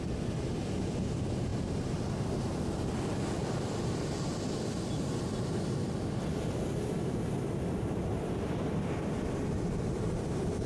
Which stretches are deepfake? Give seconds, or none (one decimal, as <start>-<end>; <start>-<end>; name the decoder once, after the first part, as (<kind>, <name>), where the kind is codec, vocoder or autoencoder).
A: none